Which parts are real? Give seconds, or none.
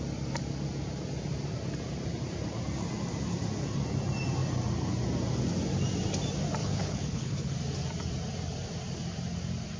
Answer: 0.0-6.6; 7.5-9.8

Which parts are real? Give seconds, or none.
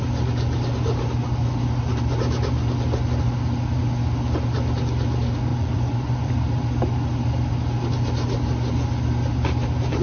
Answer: 0.0-5.5; 6.3-10.0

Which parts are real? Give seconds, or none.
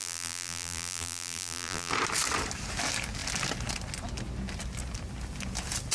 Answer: 1.9-5.9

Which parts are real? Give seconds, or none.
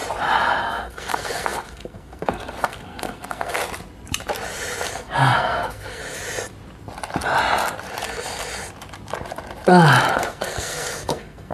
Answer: 0.0-0.6; 3.6-4.9; 6.0-10.1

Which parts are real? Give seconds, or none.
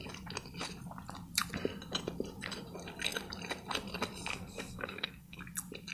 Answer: 0.0-4.3; 5.4-5.9